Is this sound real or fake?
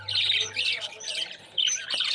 fake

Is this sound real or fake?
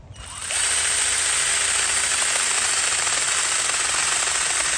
real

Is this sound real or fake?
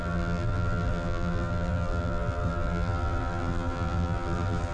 fake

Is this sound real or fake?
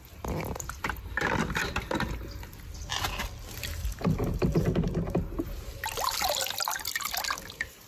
real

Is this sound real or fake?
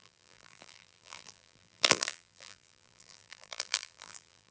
fake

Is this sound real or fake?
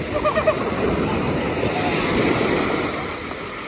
fake